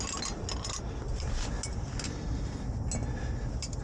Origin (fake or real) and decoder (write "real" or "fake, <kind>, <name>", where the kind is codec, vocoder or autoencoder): real